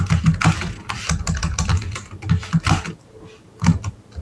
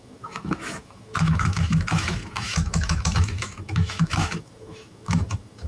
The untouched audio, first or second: first